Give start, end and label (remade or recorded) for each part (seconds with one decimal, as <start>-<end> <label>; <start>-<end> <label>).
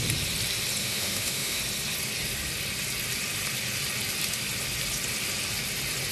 0.0-0.8 recorded; 0.8-1.6 remade; 1.6-6.1 recorded